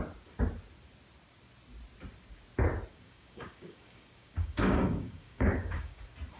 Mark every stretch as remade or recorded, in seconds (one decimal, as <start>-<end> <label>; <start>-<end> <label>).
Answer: 0.0-2.9 recorded; 2.9-6.0 remade; 6.0-6.4 recorded